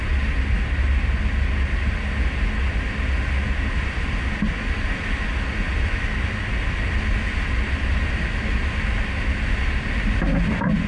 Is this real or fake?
real